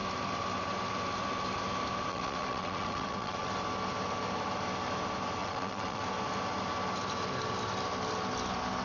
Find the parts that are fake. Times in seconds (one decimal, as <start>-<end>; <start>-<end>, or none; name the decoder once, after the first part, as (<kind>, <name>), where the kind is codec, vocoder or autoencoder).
2.1-3.5 (vocoder, WaveNeXt); 5.4-6.0